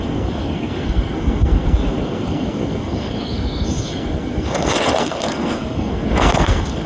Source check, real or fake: fake